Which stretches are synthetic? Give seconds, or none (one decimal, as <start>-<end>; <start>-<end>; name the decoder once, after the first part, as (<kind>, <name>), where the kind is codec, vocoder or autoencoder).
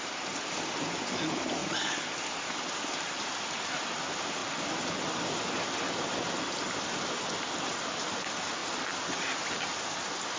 none